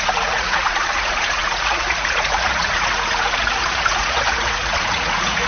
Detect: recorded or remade remade